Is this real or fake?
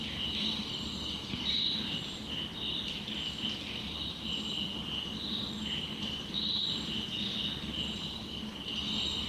real